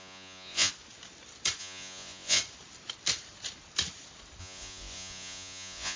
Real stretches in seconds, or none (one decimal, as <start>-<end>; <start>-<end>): 0.7-1.6; 2.4-4.4